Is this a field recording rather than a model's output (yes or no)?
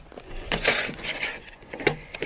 no